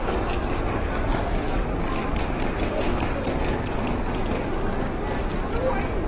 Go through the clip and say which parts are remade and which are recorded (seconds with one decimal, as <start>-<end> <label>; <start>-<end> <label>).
0.0-2.2 recorded; 2.2-3.0 remade; 3.0-6.1 recorded